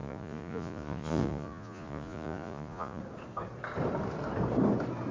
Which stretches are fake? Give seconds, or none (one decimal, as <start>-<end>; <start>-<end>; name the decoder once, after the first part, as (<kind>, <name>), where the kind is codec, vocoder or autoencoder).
0.0-3.0 (vocoder, Vocos)